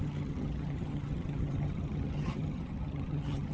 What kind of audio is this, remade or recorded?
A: remade